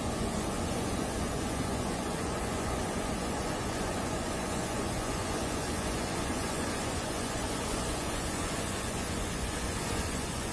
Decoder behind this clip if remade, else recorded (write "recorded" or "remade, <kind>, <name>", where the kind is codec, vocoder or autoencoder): remade, vocoder, Vocos